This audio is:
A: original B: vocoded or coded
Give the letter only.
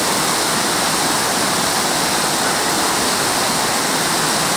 A